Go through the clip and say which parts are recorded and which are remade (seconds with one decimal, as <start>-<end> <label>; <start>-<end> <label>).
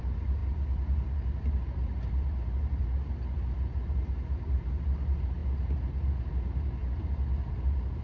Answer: 0.0-8.0 recorded